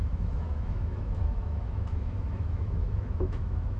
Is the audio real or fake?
fake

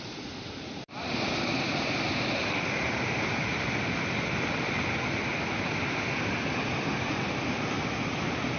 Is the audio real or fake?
real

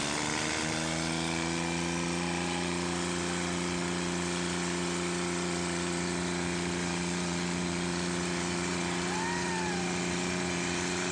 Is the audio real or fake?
real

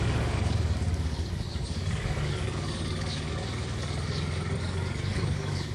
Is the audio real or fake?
fake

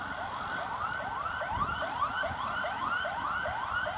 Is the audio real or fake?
real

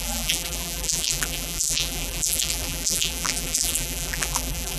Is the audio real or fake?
fake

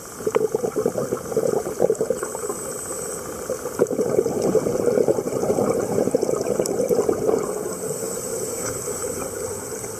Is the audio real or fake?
fake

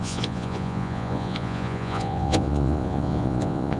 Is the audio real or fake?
fake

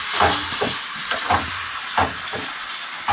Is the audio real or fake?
fake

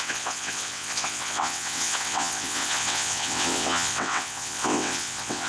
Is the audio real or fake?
fake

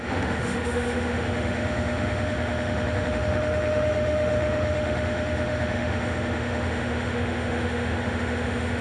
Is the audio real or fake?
fake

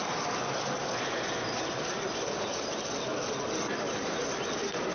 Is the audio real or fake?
real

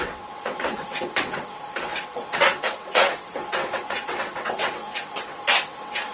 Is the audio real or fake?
fake